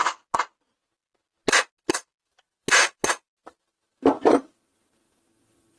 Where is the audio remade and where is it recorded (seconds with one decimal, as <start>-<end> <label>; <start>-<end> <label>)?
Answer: 0.0-5.8 recorded